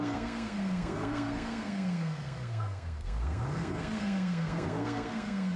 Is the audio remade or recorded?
remade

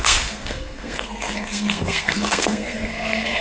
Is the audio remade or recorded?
remade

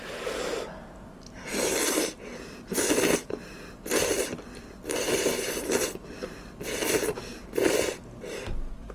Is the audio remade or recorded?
recorded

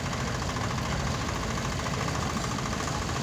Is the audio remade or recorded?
recorded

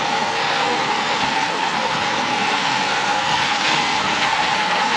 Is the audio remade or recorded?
remade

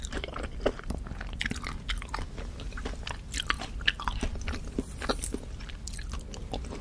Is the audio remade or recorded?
recorded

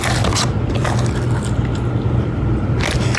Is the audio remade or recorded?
recorded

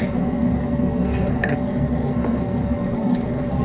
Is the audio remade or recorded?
remade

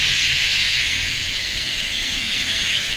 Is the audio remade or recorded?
remade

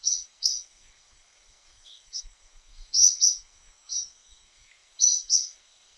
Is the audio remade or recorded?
remade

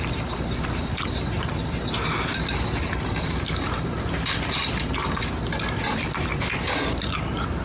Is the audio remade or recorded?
recorded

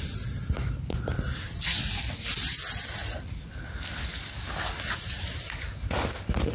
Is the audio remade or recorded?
recorded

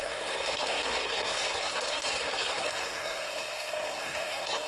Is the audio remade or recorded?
remade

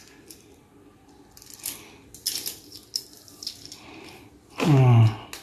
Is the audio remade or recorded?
recorded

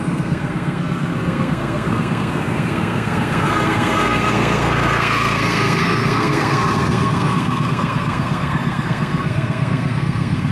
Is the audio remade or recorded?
remade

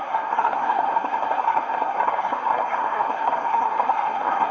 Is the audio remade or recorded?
remade